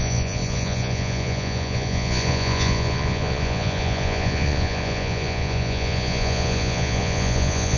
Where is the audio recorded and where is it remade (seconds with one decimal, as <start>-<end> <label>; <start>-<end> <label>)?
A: 0.0-7.8 remade